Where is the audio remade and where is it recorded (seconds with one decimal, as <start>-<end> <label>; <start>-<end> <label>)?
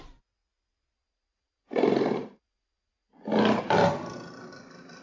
0.0-5.0 recorded